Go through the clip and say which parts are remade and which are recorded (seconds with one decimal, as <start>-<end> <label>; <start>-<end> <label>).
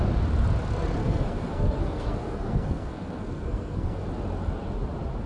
0.0-1.0 recorded; 1.0-4.0 remade; 4.0-5.3 recorded